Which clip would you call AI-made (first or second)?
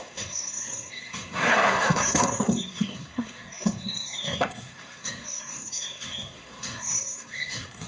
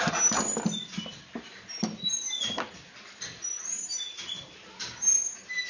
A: first